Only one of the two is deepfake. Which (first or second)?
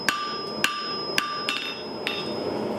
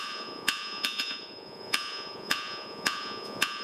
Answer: second